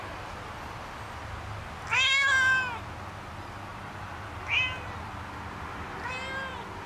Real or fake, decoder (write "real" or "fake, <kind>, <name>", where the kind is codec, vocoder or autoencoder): real